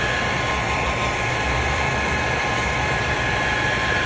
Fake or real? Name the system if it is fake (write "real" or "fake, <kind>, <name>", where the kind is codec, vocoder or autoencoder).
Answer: fake, vocoder, BigVGAN v2